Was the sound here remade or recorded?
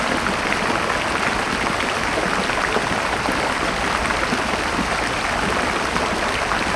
recorded